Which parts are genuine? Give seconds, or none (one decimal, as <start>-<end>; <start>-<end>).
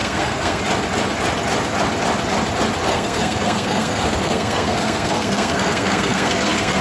0.6-2.9